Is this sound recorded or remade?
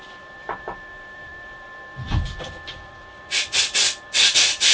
remade